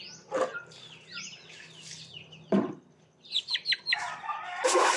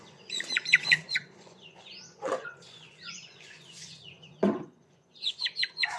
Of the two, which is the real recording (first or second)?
first